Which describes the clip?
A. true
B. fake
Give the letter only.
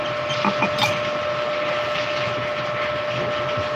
A